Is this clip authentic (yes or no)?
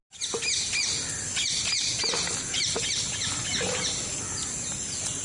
yes